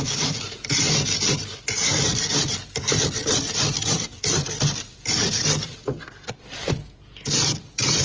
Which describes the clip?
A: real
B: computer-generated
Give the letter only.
B